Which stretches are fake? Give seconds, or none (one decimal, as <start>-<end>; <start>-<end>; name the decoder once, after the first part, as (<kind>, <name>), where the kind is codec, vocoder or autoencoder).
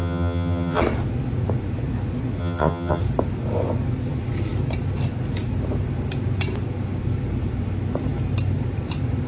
0.0-0.8 (vocoder, HiFi-GAN); 2.4-3.0